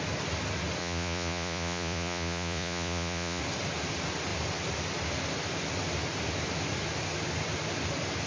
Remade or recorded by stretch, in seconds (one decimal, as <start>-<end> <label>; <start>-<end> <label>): 0.0-0.8 recorded; 0.8-3.4 remade; 3.4-8.3 recorded